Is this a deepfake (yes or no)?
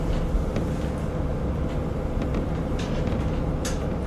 no